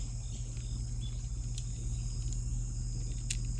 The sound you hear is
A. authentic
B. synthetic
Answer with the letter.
A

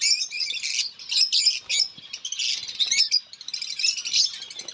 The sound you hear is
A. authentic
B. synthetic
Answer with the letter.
A